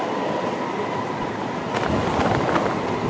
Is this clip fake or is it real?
real